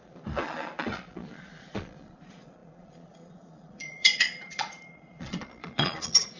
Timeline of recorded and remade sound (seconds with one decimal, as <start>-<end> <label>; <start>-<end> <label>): 0.0-6.4 remade